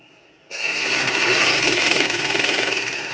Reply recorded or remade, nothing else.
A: remade